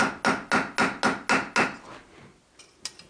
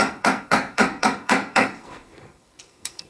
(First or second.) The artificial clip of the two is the second